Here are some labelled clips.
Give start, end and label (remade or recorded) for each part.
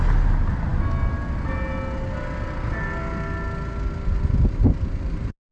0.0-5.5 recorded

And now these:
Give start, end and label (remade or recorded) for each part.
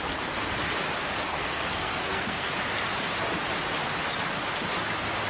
0.0-1.3 recorded; 1.3-2.5 remade; 2.5-5.3 recorded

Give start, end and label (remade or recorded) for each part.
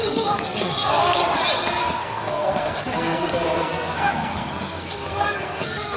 0.0-1.2 remade; 1.2-1.8 recorded; 1.8-6.0 remade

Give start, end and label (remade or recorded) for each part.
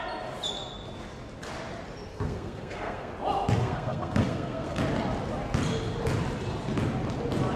0.0-2.1 recorded; 2.1-3.1 remade; 3.1-3.6 recorded; 3.6-4.8 remade; 4.8-7.6 recorded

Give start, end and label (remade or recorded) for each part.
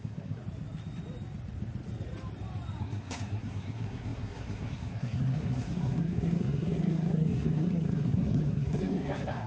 0.0-0.4 remade; 0.4-2.8 recorded; 2.8-9.5 remade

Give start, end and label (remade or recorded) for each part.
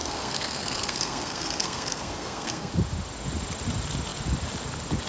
0.0-2.7 remade; 2.7-5.1 recorded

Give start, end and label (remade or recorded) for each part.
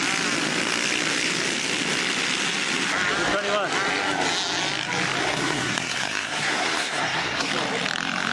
0.0-5.2 recorded; 5.2-7.5 remade; 7.5-8.3 recorded